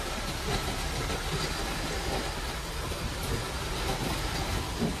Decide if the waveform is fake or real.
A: real